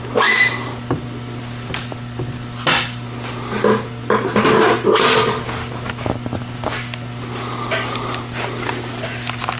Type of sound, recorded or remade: recorded